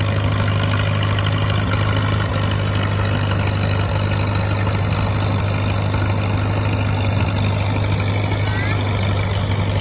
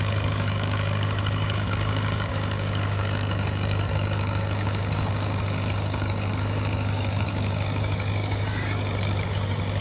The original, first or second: first